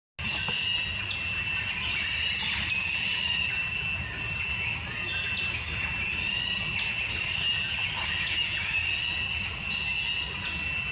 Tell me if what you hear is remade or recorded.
recorded